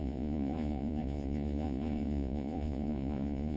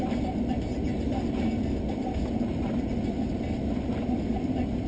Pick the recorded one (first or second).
second